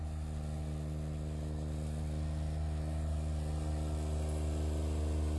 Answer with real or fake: real